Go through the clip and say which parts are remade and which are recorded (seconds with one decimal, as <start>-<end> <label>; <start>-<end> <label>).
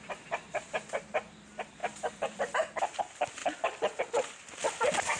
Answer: 0.0-5.2 remade